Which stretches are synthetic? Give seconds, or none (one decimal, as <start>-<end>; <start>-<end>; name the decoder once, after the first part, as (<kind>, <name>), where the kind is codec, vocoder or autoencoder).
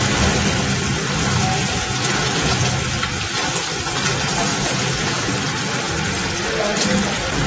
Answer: 1.6-2.7 (vocoder, Vocos); 4.5-5.3